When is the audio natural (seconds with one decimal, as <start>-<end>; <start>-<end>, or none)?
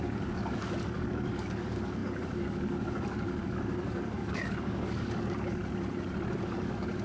5.6-6.4